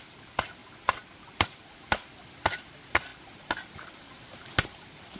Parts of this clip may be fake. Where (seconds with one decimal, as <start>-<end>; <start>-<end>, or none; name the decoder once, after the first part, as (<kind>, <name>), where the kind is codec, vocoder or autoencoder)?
0.0-0.6 (vocoder, BigVGAN v2); 1.3-5.2